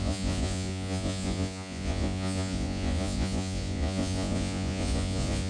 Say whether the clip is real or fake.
fake